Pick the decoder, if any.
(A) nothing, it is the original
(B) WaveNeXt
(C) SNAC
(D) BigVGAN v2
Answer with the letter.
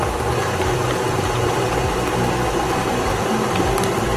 D